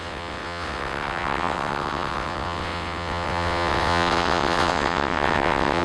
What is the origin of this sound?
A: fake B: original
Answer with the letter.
A